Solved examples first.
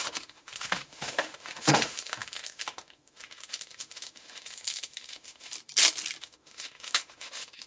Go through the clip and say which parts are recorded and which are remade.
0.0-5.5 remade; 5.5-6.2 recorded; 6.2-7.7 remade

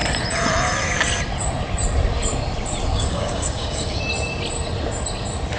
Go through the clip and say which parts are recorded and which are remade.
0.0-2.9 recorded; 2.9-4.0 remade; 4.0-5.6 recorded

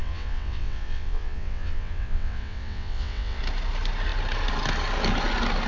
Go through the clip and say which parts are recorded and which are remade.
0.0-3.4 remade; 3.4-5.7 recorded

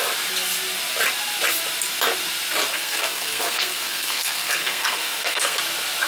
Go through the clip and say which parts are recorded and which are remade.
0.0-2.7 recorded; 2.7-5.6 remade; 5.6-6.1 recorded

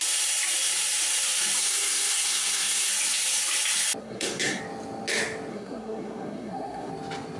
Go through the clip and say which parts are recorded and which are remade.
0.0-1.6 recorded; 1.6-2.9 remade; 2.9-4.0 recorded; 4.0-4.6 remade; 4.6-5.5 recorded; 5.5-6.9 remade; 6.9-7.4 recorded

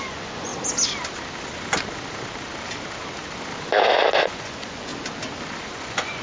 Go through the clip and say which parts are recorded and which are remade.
0.0-0.5 remade; 0.5-4.2 recorded; 4.2-4.9 remade; 4.9-5.6 recorded; 5.6-6.2 remade